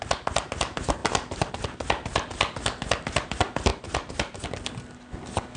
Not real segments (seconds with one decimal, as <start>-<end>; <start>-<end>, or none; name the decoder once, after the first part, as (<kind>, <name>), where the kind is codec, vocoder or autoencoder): 1.0-1.5 (vocoder, BigVGAN v2); 3.7-4.4